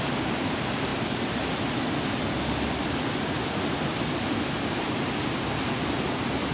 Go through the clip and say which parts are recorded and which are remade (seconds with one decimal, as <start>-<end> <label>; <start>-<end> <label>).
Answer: 0.0-6.5 recorded